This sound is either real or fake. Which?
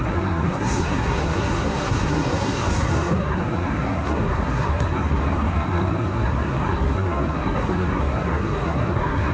fake